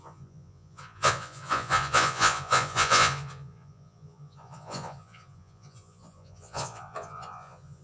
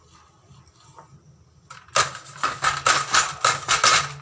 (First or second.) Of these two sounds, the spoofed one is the first